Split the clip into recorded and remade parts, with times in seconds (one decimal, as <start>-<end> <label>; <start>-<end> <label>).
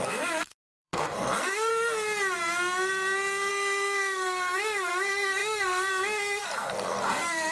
0.0-1.7 remade; 1.7-3.5 recorded; 3.5-7.5 remade